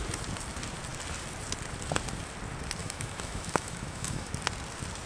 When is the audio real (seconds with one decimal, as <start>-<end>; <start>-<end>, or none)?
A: 0.0-2.8; 4.3-5.1